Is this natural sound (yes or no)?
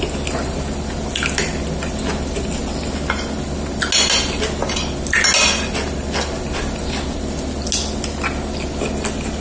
yes